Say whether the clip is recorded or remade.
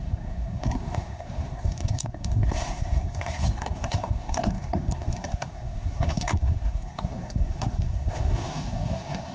remade